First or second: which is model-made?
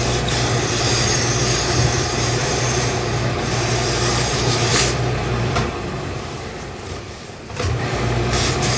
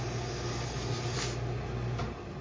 first